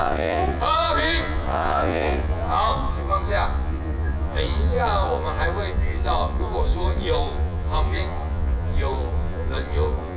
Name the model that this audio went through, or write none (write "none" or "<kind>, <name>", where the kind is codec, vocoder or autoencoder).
vocoder, Vocos